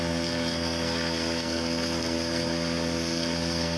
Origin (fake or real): fake